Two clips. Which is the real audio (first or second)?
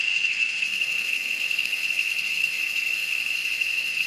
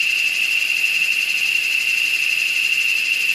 second